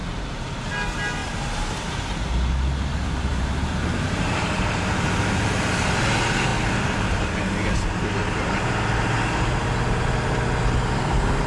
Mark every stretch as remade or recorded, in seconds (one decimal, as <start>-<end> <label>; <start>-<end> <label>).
0.0-0.7 remade; 0.7-3.3 recorded; 3.3-5.2 remade; 5.2-11.5 recorded